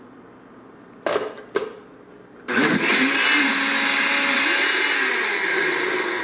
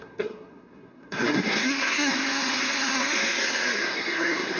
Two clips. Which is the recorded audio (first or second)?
first